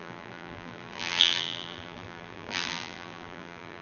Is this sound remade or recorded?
remade